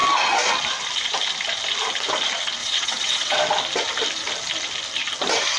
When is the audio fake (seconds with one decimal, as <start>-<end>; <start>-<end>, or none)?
2.6-3.4

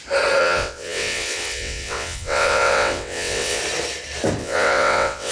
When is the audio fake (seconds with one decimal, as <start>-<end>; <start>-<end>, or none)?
0.4-3.6; 4.4-5.3

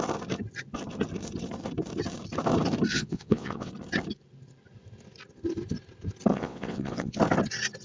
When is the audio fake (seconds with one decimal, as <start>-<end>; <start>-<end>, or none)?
2.9-3.7; 6.3-7.2